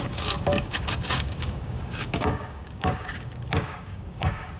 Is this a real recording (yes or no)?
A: no